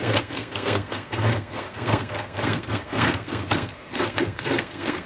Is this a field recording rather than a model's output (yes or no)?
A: no